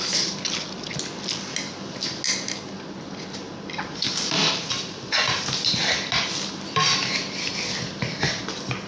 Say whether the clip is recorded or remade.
recorded